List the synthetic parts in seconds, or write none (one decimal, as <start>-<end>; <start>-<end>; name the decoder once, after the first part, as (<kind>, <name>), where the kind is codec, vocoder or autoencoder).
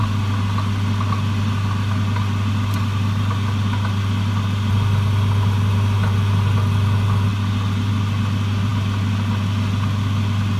none